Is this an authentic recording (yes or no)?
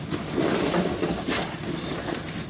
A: yes